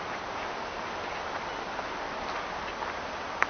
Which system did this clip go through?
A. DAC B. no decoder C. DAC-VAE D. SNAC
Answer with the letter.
B